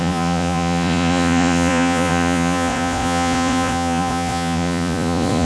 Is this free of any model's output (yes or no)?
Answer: no